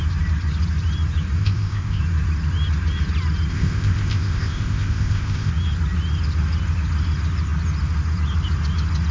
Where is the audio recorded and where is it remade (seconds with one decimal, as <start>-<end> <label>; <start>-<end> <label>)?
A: 0.0-1.4 recorded; 1.4-2.0 remade; 2.0-3.5 recorded; 3.5-5.5 remade; 5.5-9.1 recorded